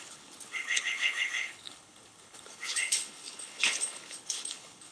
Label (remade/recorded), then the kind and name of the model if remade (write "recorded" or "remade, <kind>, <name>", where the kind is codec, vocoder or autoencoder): remade, codec, HILCodec